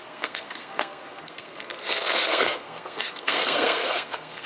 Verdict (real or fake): fake